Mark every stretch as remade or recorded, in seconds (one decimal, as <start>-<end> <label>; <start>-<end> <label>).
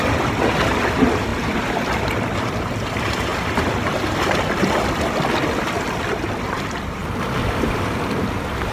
0.0-8.7 recorded